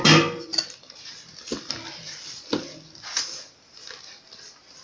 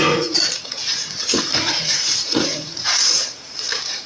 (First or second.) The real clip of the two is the first